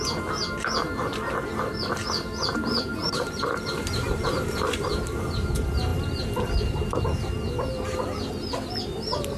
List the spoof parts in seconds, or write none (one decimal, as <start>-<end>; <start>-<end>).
3.0-4.1